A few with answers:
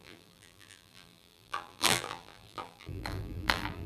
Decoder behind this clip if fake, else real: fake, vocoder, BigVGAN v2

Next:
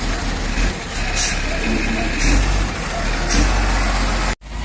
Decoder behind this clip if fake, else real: real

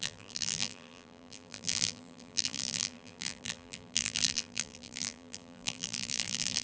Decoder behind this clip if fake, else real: fake, vocoder, BigVGAN v2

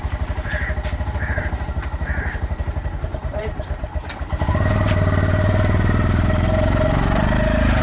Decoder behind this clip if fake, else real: fake, vocoder, BigVGAN v2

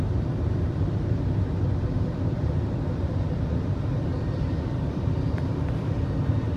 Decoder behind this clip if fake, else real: fake, vocoder, BigVGAN v2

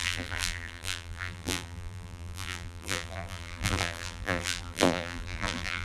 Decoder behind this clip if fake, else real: fake, vocoder, BigVGAN v2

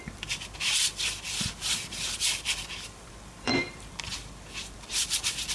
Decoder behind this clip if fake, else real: fake, vocoder, BigVGAN v2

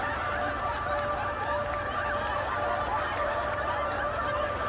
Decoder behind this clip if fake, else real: fake, vocoder, BigVGAN v2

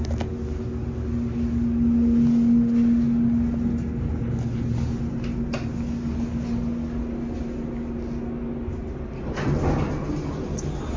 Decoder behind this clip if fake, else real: real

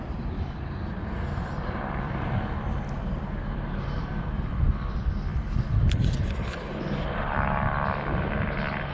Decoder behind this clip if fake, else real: fake, vocoder, BigVGAN v2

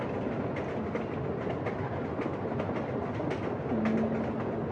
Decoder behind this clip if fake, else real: real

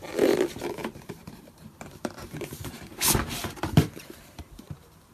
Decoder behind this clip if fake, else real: fake, vocoder, BigVGAN v2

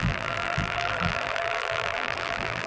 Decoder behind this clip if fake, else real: fake, vocoder, BigVGAN v2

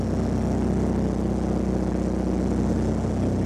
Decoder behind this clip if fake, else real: real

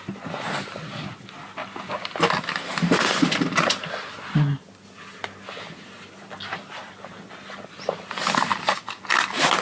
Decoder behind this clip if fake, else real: real